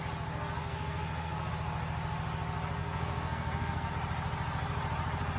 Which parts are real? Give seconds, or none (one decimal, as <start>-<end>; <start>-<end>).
0.0-0.6; 1.5-2.8; 3.9-5.4